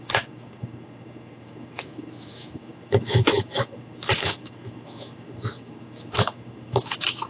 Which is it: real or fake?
fake